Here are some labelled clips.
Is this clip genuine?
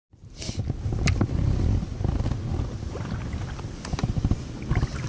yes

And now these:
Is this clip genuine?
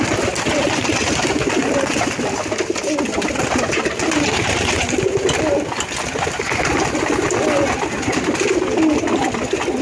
yes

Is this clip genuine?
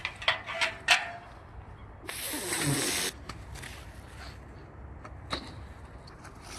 yes